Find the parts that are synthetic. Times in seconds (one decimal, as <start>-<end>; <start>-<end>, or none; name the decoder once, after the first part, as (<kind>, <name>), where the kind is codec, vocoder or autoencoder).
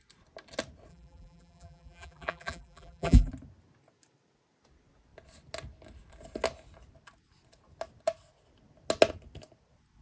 0.9-3.3 (vocoder, BigVGAN v2)